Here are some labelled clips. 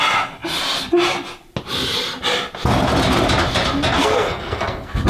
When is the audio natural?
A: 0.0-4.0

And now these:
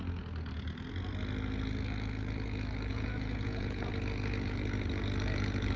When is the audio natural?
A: 0.0-2.9; 3.9-5.8